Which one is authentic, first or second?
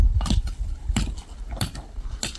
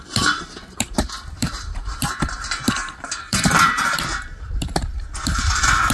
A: first